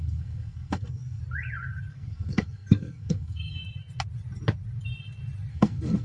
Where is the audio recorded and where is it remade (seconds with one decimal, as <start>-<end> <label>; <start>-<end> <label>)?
0.0-1.2 remade; 1.2-1.9 recorded; 1.9-3.6 remade; 3.6-5.5 recorded; 5.5-6.0 remade